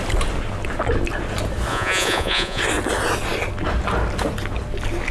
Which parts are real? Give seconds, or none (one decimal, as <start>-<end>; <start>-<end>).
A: 0.0-1.7; 2.6-5.1